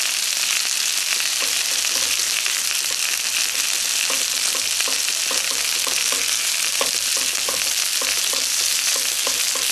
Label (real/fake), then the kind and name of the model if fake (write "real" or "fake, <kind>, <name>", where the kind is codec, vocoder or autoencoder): real